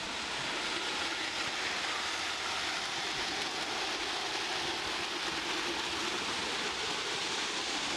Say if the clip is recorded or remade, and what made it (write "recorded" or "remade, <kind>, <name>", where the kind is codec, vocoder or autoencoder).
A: recorded